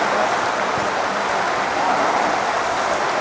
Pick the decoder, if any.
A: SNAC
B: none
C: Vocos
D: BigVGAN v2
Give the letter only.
B